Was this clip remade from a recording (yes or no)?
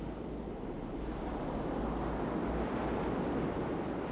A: no